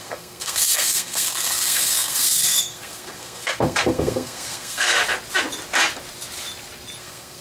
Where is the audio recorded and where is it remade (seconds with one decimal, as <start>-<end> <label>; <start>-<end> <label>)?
0.0-5.0 remade; 5.0-7.0 recorded; 7.0-7.4 remade